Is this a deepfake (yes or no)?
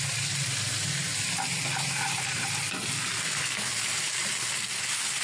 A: no